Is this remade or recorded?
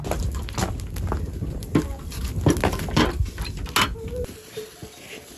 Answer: recorded